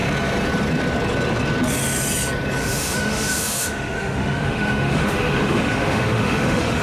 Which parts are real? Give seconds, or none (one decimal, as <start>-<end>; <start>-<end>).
0.0-2.6